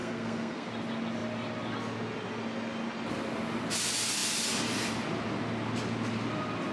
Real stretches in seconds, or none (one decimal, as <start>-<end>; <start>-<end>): 0.7-6.7